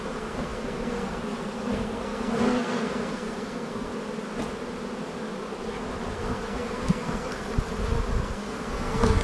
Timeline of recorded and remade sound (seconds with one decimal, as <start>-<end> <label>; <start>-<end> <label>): 0.0-3.9 remade; 3.9-6.1 recorded; 6.1-7.5 remade; 7.5-8.2 recorded; 8.2-9.2 remade